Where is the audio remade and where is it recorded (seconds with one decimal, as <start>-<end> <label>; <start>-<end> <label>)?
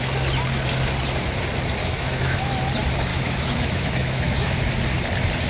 0.0-1.8 recorded; 1.8-2.6 remade; 2.6-3.1 recorded; 3.1-4.7 remade; 4.7-5.5 recorded